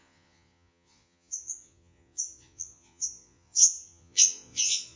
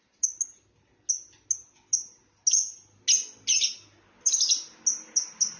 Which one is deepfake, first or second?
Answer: first